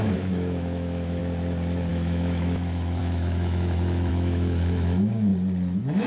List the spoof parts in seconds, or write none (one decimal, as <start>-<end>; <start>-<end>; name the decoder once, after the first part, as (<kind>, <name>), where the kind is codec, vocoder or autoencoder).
0.0-1.2 (autoencoder, DAC-VAE); 1.9-5.3